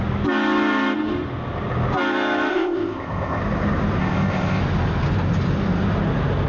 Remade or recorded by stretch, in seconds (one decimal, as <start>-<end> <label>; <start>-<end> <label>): 0.0-2.5 recorded; 2.5-3.4 remade; 3.4-4.0 recorded; 4.0-4.6 remade; 4.6-6.5 recorded

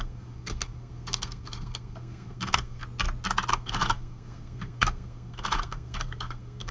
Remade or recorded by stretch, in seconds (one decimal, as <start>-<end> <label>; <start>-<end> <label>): 0.0-2.8 remade; 2.8-3.5 recorded; 3.5-6.7 remade

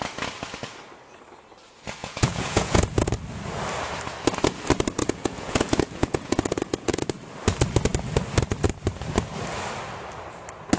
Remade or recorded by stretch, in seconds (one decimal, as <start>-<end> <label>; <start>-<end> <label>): 0.0-2.0 recorded; 2.0-3.1 remade; 3.1-5.0 recorded; 5.0-7.0 remade; 7.0-10.8 recorded

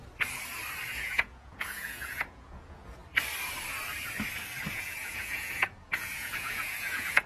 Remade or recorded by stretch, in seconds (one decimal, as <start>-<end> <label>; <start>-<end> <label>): 0.0-0.9 recorded; 0.9-3.0 remade; 3.0-4.7 recorded; 4.7-7.3 remade

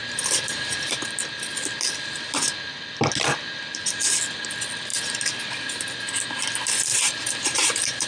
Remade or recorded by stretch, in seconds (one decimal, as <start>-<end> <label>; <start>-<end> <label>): 0.0-0.9 remade; 0.9-4.9 recorded; 4.9-5.4 remade; 5.4-6.9 recorded; 6.9-8.1 remade